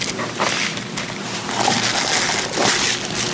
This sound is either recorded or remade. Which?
recorded